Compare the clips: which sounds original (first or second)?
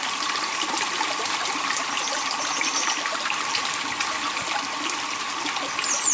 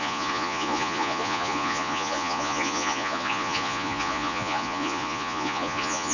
first